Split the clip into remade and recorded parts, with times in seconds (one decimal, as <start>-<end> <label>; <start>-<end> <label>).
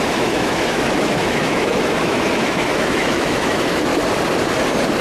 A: 0.0-3.9 remade; 3.9-5.0 recorded